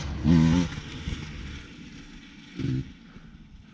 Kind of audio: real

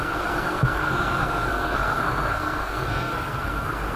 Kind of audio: fake